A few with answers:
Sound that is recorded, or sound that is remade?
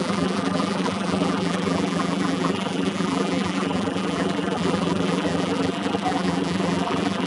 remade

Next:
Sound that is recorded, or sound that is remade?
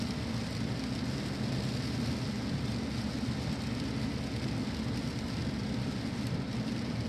recorded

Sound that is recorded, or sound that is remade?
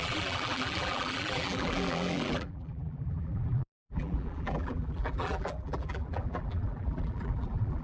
remade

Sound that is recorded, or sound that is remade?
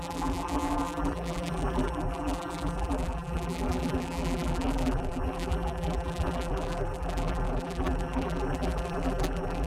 remade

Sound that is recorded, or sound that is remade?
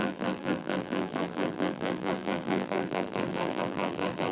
remade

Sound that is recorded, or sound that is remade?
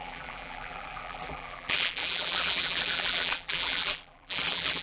remade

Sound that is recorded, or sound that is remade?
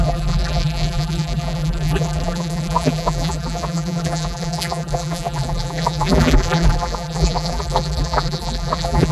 remade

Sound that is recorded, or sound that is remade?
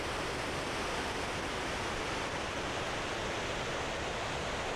recorded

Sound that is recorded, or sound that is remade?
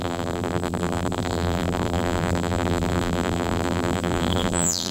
remade